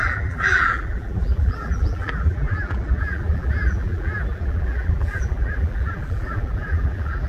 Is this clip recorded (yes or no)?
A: no